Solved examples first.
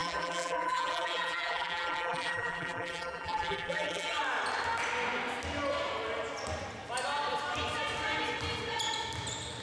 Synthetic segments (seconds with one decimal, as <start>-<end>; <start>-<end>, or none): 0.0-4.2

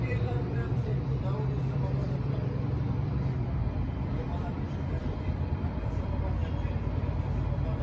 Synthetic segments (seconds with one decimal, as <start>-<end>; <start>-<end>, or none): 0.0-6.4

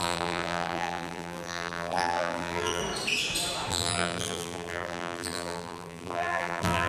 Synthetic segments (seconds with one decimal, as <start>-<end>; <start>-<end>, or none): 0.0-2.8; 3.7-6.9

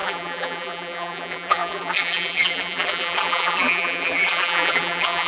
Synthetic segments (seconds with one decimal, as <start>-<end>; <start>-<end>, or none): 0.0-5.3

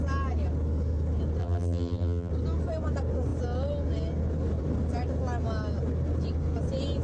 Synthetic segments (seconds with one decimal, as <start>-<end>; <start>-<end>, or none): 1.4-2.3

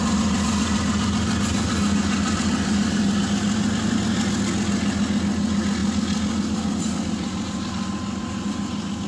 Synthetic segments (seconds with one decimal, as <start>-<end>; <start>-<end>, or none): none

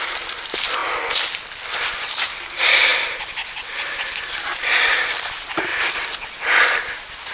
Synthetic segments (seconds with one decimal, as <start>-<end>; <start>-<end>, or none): 0.0-0.8; 2.0-2.9; 4.0-5.7; 6.6-7.3